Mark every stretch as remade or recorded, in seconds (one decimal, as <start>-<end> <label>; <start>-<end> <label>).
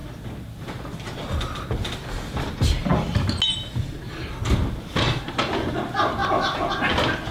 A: 0.0-7.3 recorded